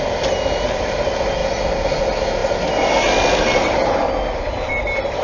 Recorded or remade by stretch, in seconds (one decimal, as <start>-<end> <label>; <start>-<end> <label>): 0.0-5.2 recorded